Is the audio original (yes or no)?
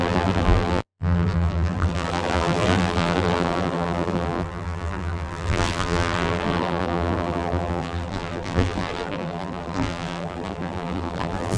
no